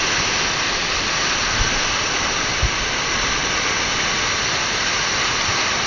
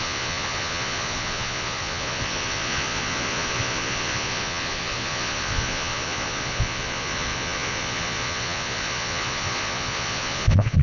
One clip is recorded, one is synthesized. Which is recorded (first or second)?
first